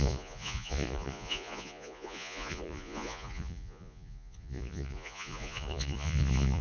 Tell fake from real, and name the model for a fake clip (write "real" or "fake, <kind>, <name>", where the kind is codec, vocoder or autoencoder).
fake, vocoder, Vocos